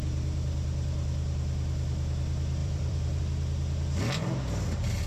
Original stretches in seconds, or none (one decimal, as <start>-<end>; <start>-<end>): 0.0-2.6; 3.2-5.1